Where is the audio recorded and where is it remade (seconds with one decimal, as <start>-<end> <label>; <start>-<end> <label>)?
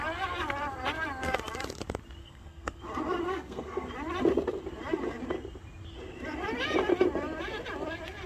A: 0.0-2.2 recorded; 2.2-2.8 remade; 2.8-3.3 recorded; 3.3-3.9 remade; 3.9-8.3 recorded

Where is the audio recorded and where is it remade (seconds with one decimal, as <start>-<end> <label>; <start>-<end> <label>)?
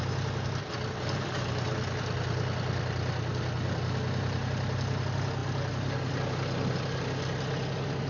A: 0.0-8.1 recorded